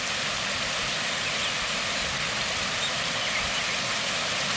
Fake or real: real